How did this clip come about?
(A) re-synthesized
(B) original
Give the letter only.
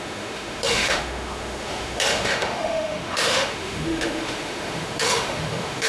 A